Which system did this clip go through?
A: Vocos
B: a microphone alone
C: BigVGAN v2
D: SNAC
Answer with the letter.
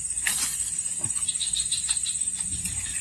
B